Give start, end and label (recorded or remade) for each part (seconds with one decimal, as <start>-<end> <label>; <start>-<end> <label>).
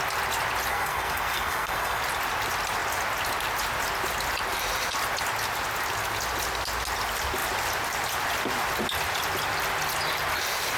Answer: 0.0-0.7 recorded; 0.7-2.0 remade; 2.0-10.8 recorded